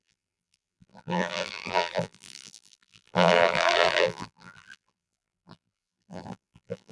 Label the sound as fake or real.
fake